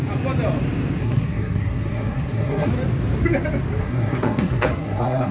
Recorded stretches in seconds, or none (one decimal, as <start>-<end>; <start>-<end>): 0.0-1.0; 2.7-3.8